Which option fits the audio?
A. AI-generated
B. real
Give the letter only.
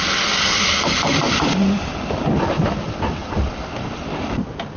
A